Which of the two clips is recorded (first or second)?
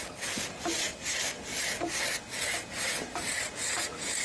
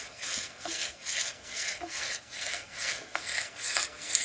first